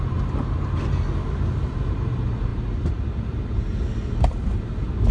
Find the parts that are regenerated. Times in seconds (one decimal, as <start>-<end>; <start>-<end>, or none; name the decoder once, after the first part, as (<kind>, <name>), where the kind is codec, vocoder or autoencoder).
none